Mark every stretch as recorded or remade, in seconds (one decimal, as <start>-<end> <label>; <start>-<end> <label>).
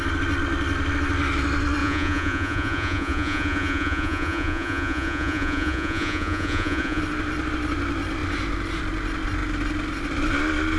0.0-1.8 recorded; 1.8-7.0 remade; 7.0-10.8 recorded